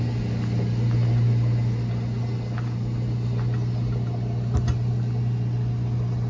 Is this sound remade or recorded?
recorded